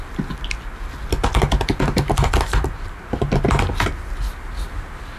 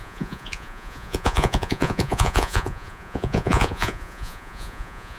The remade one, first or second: second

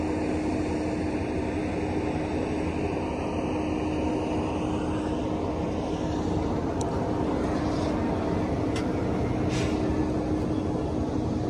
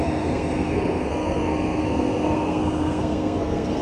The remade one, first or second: second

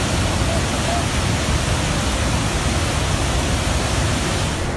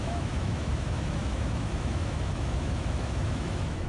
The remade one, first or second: second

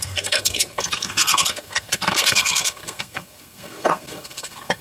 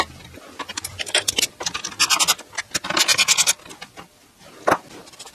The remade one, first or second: first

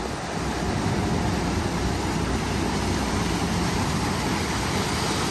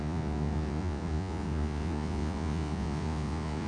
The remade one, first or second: second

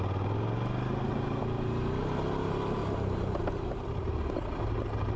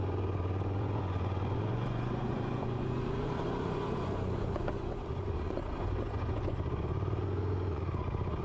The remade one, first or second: second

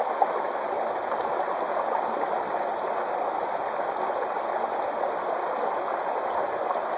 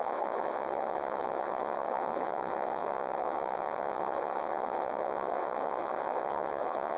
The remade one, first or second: second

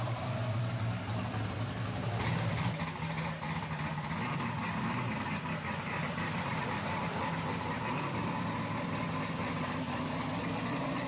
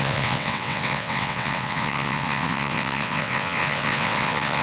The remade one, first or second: second